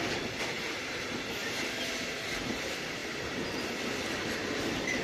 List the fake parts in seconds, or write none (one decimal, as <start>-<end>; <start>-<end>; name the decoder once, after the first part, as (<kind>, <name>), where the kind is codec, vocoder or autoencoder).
0.0-5.0 (vocoder, BigVGAN v2)